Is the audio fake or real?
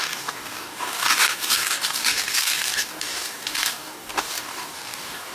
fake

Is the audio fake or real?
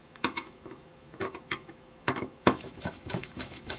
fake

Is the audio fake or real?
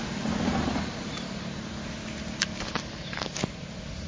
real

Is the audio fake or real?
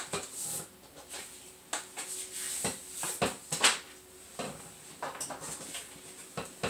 real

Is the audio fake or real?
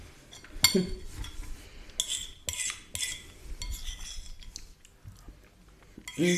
real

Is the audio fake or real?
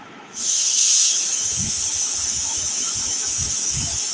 fake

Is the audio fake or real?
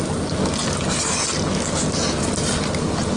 real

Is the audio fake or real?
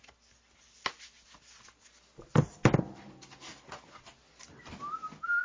real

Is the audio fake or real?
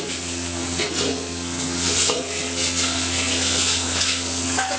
fake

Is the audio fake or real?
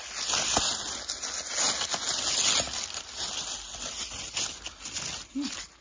real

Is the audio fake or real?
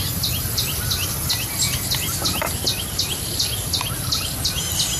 real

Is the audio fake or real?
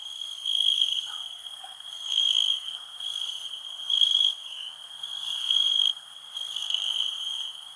fake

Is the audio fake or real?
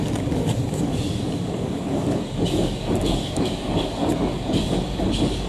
fake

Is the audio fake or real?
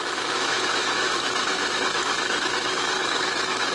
fake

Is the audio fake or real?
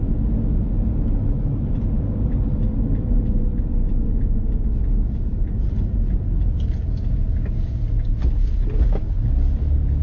real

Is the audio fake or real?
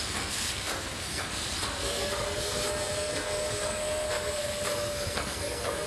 fake